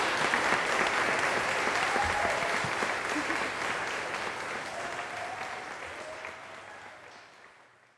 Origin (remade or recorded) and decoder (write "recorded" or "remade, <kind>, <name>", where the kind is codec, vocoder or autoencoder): recorded